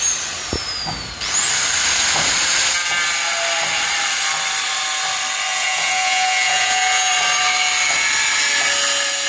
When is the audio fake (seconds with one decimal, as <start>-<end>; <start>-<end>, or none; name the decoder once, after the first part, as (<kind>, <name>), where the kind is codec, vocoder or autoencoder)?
5.5-7.1 (vocoder, Vocos)